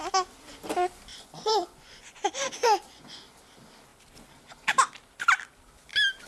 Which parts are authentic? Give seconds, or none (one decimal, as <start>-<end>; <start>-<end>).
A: 0.0-1.1; 3.2-6.3